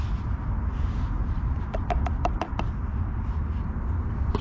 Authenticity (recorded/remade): recorded